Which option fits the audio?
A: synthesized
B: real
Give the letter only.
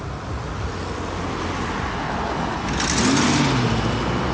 B